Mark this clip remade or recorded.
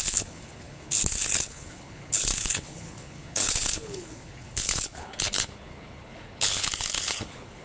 remade